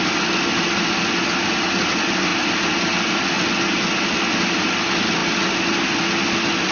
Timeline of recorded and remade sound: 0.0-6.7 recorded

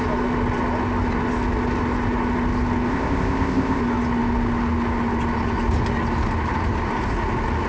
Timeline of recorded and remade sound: 0.0-2.9 recorded; 2.9-3.8 remade; 3.8-7.7 recorded

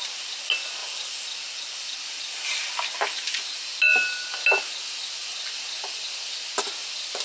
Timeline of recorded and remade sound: 0.0-7.2 recorded

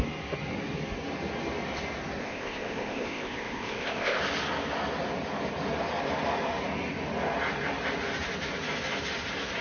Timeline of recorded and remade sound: 0.0-2.2 recorded; 2.2-4.2 remade; 4.2-9.6 recorded

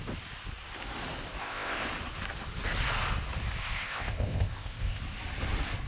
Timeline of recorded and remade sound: 0.0-1.4 recorded; 1.4-1.9 remade; 1.9-3.6 recorded; 3.6-5.0 remade; 5.0-5.9 recorded